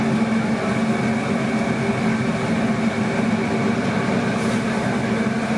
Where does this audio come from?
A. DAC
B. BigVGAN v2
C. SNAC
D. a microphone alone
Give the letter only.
D